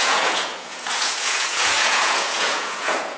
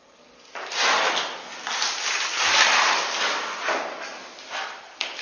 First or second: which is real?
second